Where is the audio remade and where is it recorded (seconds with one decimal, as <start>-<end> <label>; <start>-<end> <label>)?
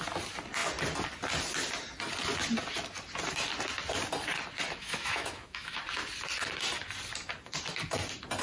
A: 0.0-4.8 recorded; 4.8-5.8 remade; 5.8-8.4 recorded